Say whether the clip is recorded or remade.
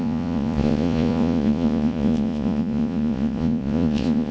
remade